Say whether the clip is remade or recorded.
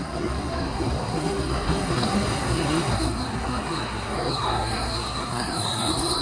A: remade